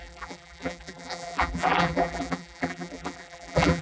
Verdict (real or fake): fake